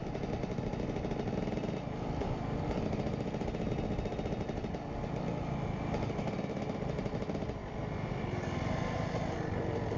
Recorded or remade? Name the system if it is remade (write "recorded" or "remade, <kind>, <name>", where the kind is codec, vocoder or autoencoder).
recorded